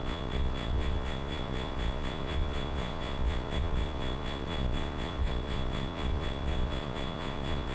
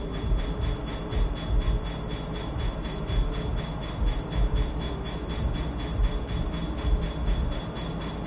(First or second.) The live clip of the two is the second